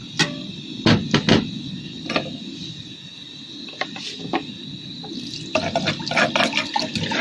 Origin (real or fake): real